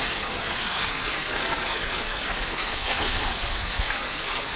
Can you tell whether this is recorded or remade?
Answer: remade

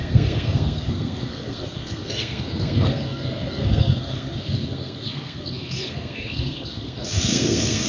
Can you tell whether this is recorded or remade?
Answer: remade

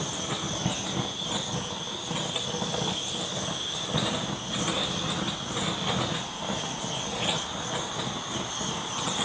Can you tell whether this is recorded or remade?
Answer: recorded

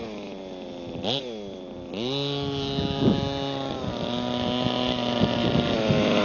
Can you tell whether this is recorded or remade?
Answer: recorded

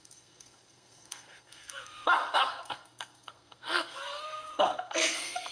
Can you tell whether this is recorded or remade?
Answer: remade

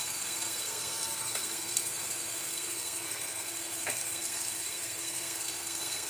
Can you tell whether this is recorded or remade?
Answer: remade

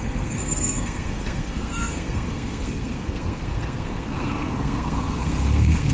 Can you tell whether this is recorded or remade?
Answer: remade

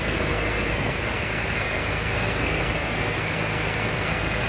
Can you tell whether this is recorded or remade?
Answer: remade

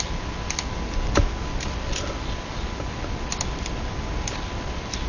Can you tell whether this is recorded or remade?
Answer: recorded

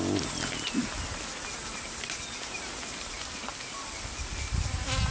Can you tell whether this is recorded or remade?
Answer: recorded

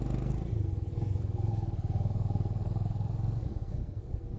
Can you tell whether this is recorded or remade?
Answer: remade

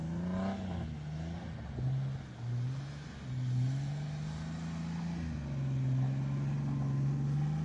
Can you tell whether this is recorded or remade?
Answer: recorded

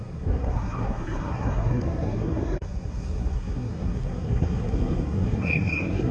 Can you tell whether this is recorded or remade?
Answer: remade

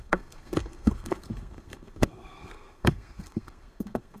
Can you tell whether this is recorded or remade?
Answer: remade